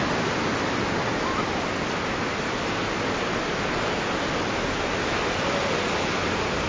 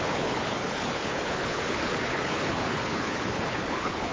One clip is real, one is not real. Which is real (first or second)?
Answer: first